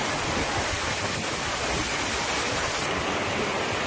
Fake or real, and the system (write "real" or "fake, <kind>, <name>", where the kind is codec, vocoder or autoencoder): real